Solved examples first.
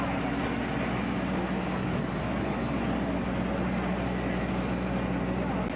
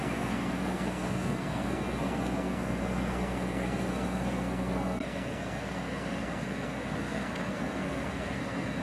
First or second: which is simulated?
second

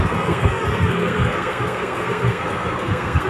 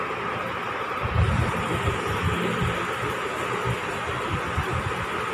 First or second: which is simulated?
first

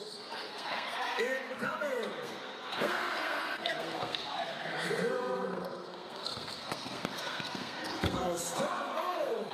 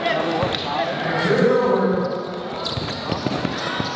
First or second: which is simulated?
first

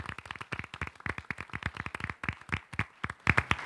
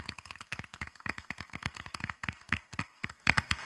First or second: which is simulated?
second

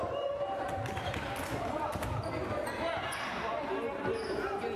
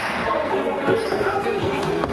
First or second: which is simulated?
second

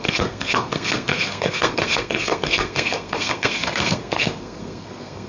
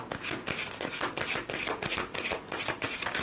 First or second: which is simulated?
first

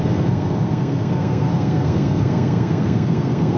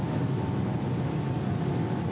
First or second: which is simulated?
first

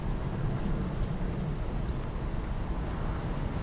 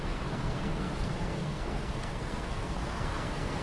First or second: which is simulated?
second